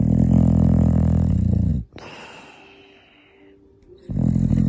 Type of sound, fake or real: real